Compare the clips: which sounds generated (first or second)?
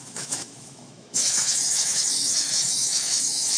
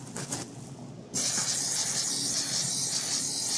first